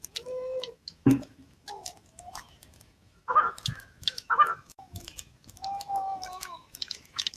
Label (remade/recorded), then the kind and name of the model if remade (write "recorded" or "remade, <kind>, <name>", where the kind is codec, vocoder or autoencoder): remade, autoencoder, DAC-VAE